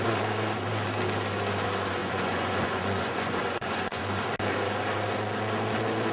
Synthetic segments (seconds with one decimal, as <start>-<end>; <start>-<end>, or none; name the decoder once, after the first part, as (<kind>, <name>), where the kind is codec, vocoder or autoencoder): 2.0-4.0 (vocoder, Vocos)

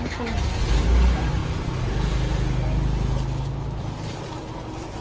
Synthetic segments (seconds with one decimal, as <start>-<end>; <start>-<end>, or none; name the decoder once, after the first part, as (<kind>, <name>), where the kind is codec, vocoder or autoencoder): none

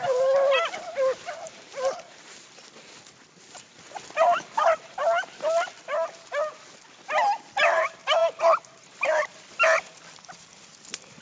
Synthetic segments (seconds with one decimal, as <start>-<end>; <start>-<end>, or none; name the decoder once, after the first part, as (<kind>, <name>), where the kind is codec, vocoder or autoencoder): none

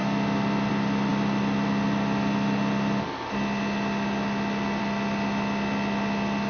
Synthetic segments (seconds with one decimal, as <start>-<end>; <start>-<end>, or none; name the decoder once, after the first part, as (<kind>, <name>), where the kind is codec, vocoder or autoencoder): none